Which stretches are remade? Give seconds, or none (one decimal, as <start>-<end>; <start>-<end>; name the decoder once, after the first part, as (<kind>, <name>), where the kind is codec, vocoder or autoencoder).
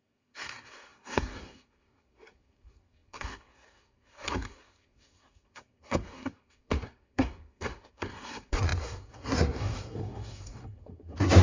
0.0-11.4 (codec, SNAC)